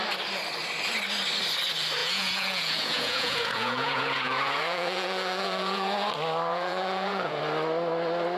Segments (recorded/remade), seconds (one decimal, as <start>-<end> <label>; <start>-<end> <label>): 0.0-2.0 recorded; 2.0-6.1 remade; 6.1-6.5 recorded; 6.5-7.4 remade; 7.4-8.4 recorded